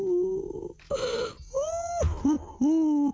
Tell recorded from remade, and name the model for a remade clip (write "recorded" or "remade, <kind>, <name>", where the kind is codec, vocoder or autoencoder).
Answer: recorded